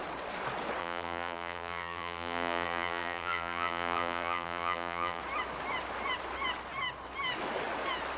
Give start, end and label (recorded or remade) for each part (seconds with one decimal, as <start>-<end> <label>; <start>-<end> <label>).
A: 0.0-0.8 recorded; 0.8-5.2 remade; 5.2-8.2 recorded